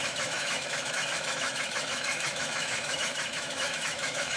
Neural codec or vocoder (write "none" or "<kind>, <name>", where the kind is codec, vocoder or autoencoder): autoencoder, DAC-VAE